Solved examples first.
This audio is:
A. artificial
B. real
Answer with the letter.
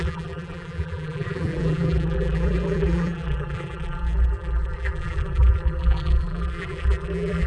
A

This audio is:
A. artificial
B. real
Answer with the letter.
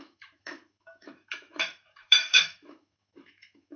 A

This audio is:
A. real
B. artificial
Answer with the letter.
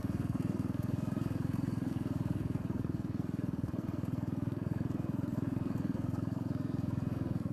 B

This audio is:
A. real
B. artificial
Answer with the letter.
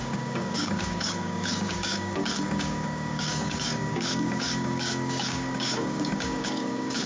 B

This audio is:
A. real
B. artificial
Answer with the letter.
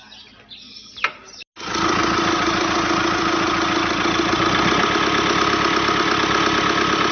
A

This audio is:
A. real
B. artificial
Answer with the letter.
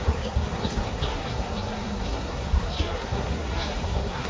B